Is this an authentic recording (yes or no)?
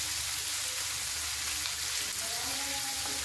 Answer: yes